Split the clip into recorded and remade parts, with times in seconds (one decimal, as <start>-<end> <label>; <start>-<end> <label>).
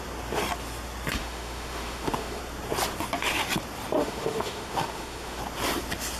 0.0-1.2 recorded; 1.2-2.4 remade; 2.4-4.0 recorded; 4.0-5.4 remade; 5.4-6.2 recorded